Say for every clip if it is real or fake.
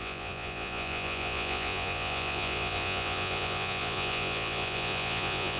fake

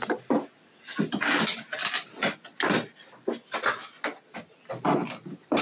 real